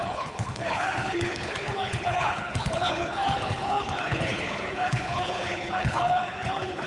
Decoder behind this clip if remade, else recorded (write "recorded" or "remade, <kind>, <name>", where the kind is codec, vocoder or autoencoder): remade, codec, HILCodec